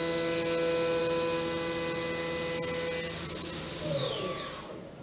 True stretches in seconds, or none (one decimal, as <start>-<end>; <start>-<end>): 0.0-5.0